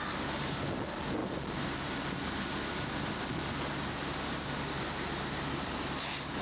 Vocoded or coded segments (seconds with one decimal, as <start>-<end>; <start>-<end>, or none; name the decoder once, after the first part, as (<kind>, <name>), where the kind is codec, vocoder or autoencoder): none